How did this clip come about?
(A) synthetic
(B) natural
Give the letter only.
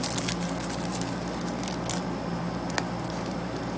B